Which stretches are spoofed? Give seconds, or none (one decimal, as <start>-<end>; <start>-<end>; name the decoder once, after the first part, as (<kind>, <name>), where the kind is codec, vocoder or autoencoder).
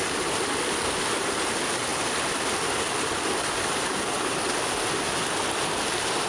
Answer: none